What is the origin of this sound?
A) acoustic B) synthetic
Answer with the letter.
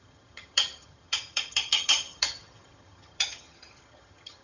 B